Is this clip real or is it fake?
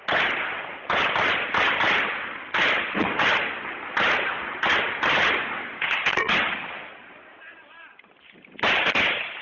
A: real